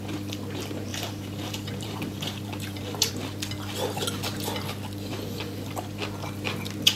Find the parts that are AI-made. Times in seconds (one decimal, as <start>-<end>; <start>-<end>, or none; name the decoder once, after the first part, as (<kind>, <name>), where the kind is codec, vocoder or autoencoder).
0.9-3.1 (vocoder, BigVGAN v2)